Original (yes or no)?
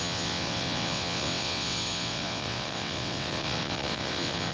no